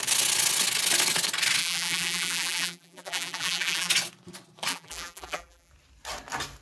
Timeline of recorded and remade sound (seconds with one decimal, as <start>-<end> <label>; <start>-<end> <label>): 0.0-1.6 recorded; 1.6-3.9 remade; 3.9-4.7 recorded; 4.7-5.7 remade; 5.7-6.6 recorded